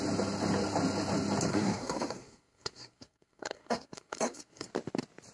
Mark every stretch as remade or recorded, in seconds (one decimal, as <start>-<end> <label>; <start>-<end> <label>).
0.0-1.5 recorded; 1.5-4.7 remade; 4.7-5.3 recorded